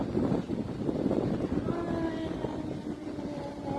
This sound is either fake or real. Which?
real